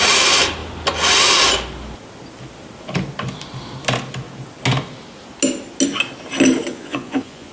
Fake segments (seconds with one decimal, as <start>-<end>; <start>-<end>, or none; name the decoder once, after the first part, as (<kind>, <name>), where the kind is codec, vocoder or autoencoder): 6.7-7.5 (vocoder, Vocos)